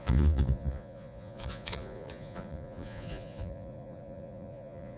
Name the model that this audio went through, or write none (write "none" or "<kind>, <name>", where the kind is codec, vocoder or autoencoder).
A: vocoder, Vocos